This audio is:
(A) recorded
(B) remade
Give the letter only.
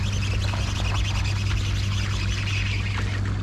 A